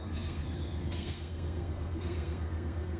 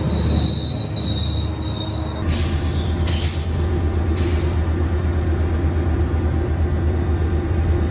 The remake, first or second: first